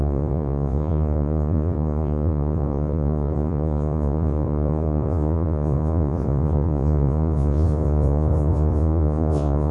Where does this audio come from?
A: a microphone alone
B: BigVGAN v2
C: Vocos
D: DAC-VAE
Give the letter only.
C